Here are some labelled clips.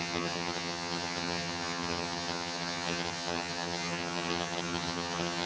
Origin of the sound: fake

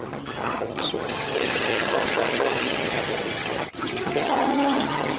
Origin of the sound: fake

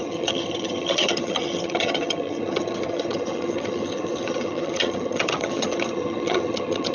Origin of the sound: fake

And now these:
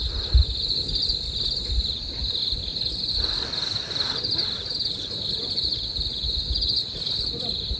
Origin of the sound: real